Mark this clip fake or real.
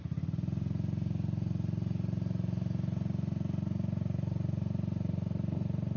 real